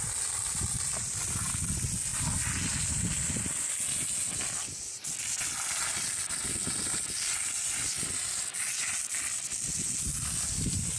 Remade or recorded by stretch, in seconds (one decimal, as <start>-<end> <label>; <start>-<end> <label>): 0.0-11.0 recorded